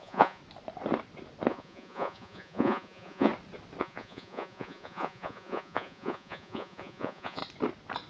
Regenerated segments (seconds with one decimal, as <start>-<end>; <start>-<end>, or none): 0.0-0.4; 1.5-3.3; 3.8-7.4